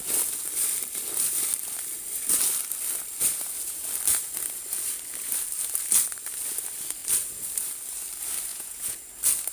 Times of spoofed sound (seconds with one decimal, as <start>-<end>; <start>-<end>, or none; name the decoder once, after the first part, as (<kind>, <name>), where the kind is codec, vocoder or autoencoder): 8.5-9.1 (vocoder, Vocos)